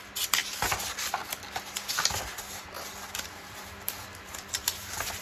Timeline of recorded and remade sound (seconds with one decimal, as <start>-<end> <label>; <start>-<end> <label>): 0.0-0.4 remade; 0.4-2.6 recorded; 2.6-5.2 remade